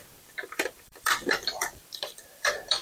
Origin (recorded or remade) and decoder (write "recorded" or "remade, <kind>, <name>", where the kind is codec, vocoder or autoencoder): remade, vocoder, BigVGAN v2